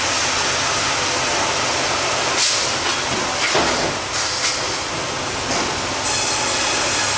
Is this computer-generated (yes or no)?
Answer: no